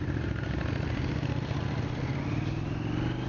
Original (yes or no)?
yes